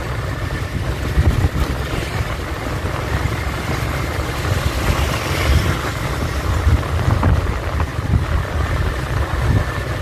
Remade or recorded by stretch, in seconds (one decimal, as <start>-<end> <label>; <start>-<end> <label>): 0.0-10.0 recorded